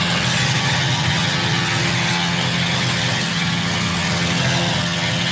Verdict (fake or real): fake